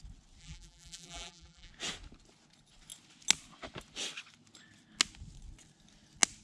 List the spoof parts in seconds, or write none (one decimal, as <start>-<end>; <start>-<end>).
0.4-1.7